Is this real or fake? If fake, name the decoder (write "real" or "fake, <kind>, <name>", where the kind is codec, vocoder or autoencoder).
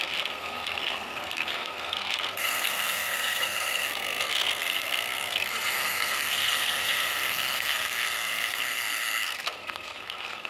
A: fake, codec, SNAC